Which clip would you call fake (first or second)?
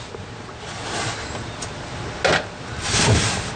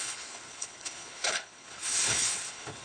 second